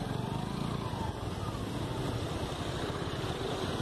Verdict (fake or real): real